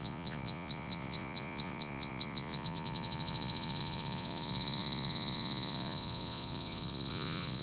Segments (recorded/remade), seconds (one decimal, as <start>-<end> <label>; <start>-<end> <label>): 0.0-7.6 remade